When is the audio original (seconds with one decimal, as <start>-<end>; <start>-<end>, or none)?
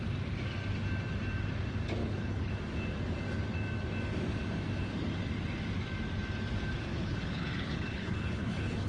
0.0-2.0; 2.5-6.9